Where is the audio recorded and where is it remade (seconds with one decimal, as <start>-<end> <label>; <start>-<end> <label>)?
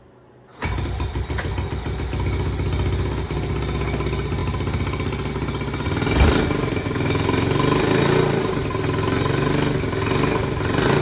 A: 0.0-0.5 recorded; 0.5-1.5 remade; 1.5-11.0 recorded